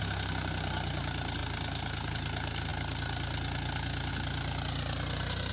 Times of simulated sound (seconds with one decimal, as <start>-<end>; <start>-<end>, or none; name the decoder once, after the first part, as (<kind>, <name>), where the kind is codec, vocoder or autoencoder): none